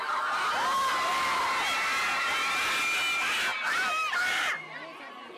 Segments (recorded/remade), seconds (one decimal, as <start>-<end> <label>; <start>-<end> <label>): 0.0-3.5 recorded; 3.5-4.5 remade; 4.5-5.4 recorded